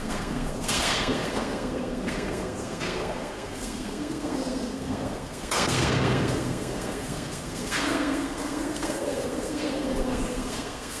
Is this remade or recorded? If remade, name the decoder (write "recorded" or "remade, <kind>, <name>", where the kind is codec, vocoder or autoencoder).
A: remade, codec, SNAC